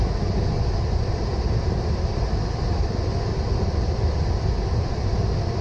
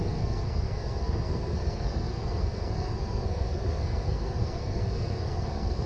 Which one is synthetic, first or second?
second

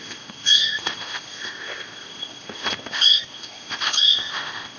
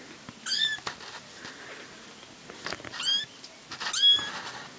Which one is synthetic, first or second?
first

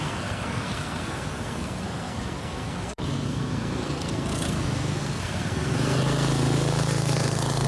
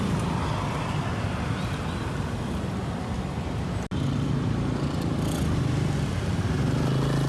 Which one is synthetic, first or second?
first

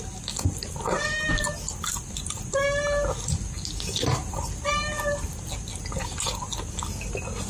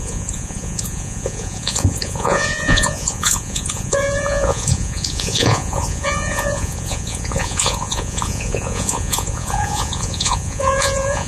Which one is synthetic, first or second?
second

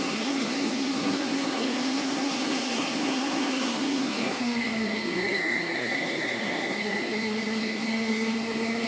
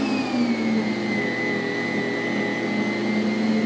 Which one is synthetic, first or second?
first